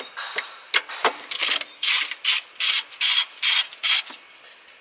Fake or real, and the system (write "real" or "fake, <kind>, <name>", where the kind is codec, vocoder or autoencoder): real